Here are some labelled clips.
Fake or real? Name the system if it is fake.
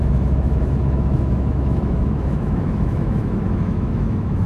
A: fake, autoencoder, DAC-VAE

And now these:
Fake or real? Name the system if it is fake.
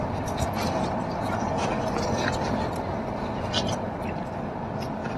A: real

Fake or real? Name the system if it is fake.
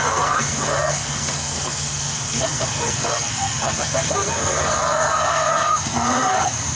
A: fake, codec, SNAC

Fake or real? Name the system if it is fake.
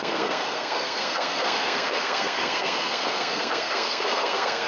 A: fake, codec, SNAC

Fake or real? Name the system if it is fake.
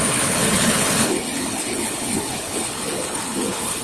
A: fake, codec, HILCodec